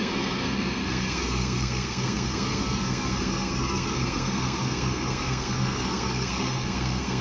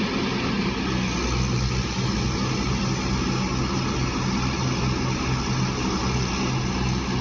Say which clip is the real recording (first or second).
second